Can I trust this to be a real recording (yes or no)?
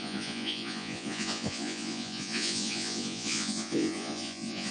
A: no